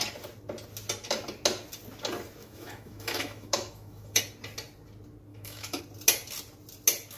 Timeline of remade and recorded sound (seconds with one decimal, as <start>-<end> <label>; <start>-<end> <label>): 0.0-2.4 recorded; 2.4-4.2 remade; 4.2-5.3 recorded; 5.3-5.8 remade; 5.8-7.2 recorded